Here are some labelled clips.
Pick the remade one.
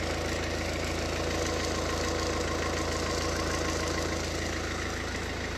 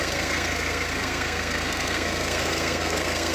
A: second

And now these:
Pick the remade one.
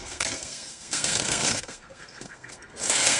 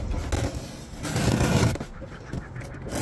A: first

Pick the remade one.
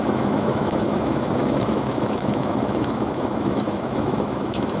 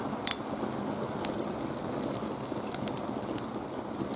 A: first